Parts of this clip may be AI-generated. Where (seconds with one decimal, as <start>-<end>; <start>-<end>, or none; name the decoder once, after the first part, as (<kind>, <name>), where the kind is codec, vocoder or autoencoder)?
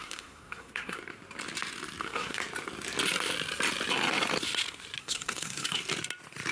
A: 0.0-1.0 (codec, SNAC); 2.0-2.4; 5.0-5.8